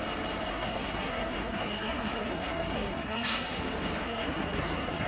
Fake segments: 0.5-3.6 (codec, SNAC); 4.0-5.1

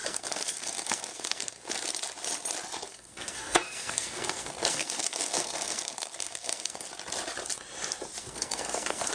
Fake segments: 0.0-1.7 (codec, SNAC); 2.9-6.9; 8.2-9.1

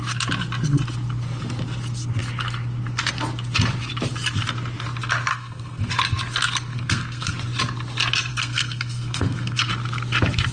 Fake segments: 5.3-5.9 (codec, SNAC); 6.7-7.3; 8.3-9.7

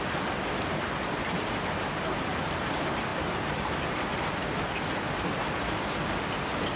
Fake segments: none

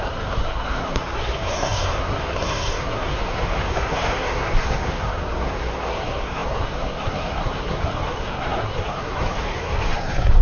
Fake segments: 0.0-10.4 (codec, SNAC)